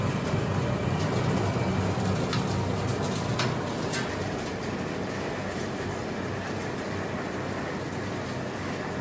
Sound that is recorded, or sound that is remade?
recorded